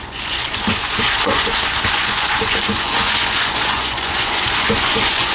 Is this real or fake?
fake